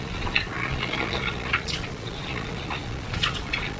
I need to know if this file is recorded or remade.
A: remade